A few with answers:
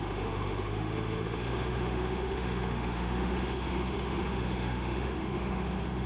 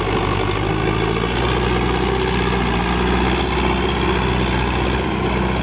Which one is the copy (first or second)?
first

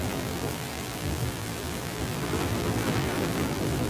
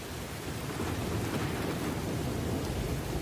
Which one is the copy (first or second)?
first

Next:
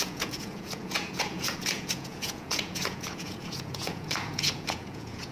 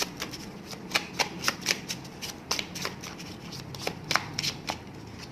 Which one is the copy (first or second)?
first